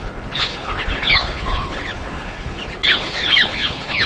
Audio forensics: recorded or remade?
remade